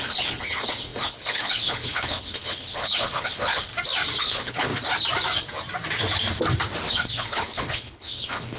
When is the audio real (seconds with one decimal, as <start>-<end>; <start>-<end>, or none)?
3.7-4.2; 4.7-6.9